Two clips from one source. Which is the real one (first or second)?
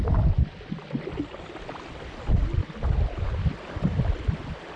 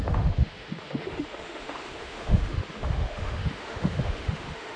first